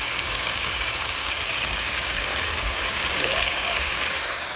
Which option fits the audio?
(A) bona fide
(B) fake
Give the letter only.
B